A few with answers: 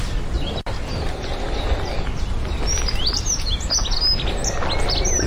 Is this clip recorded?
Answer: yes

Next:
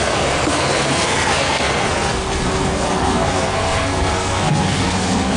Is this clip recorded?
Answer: no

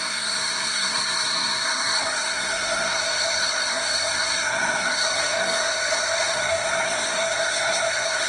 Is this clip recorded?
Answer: no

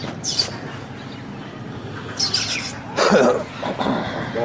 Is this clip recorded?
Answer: yes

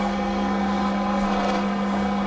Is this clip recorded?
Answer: no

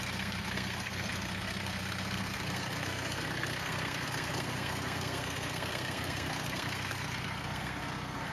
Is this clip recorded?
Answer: no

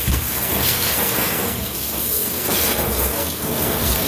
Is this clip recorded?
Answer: no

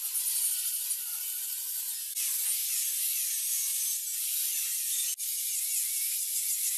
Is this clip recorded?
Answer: yes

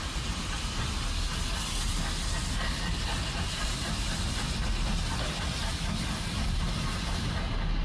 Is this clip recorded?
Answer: yes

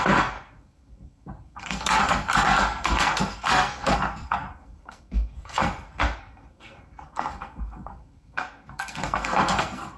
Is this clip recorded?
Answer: no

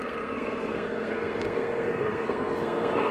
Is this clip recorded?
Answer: no